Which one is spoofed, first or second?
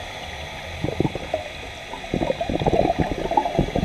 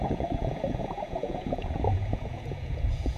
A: second